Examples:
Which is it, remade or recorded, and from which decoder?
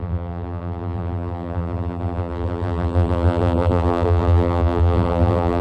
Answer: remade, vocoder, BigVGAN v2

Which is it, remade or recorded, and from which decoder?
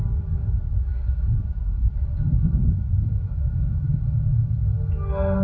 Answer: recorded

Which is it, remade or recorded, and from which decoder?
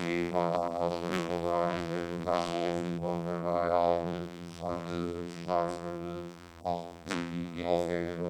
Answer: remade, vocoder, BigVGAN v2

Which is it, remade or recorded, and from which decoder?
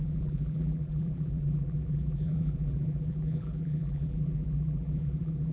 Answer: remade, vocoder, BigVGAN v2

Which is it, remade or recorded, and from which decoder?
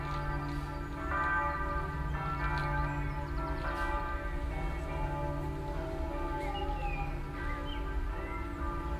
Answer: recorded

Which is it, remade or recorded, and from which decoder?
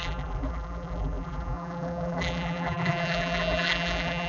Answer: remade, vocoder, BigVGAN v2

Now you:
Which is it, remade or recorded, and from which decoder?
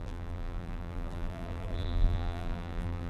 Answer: remade, vocoder, BigVGAN v2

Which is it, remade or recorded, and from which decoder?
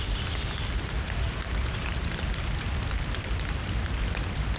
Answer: remade, vocoder, BigVGAN v2